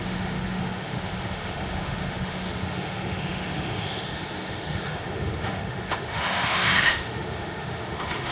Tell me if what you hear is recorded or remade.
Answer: remade